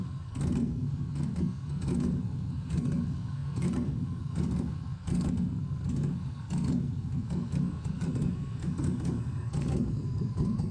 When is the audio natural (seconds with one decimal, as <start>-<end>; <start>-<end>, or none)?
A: none